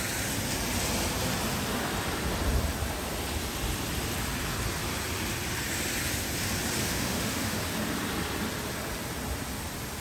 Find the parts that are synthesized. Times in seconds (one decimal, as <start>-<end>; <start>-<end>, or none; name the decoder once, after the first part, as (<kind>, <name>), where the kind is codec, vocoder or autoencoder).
6.8-7.6 (autoencoder, DAC-VAE)